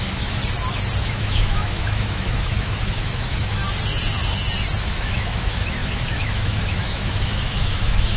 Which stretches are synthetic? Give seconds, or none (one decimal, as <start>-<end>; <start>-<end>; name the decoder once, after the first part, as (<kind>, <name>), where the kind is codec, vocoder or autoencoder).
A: 0.0-0.4 (autoencoder, DAC-VAE); 1.0-3.6; 4.8-8.2